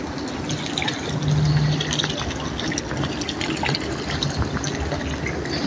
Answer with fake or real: real